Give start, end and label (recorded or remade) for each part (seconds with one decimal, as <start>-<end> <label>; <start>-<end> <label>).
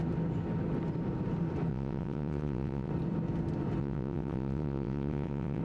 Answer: 0.0-1.7 recorded; 1.7-2.9 remade; 2.9-3.8 recorded; 3.8-5.6 remade